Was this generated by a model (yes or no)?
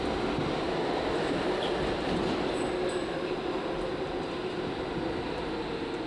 no